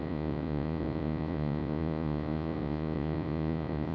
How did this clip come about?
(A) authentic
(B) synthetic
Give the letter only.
B